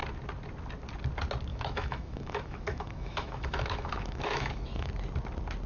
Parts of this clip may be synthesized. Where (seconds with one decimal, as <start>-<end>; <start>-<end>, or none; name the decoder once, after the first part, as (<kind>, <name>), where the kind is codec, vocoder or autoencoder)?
1.5-4.9 (autoencoder, DAC-VAE)